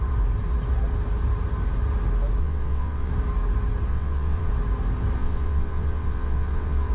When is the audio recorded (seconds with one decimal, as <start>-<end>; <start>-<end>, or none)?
0.0-2.4; 3.1-3.9; 4.5-5.2